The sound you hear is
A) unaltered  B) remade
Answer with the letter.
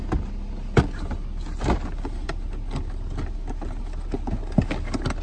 A